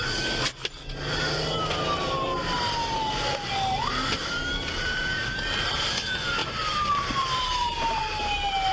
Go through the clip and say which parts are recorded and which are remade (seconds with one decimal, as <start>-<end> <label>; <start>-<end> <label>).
0.0-3.0 recorded; 3.0-3.5 remade; 3.5-4.2 recorded; 4.2-5.5 remade; 5.5-6.4 recorded; 6.4-8.0 remade; 8.0-8.7 recorded